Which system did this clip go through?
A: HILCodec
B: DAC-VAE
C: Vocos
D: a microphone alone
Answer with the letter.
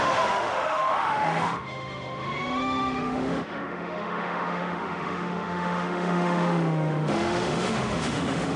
B